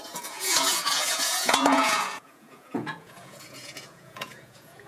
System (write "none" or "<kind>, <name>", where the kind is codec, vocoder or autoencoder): vocoder, Vocos